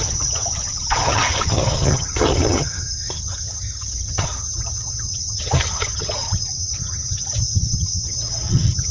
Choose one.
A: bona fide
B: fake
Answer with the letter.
B